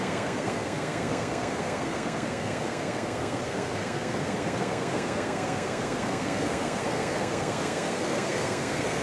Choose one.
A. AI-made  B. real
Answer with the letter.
A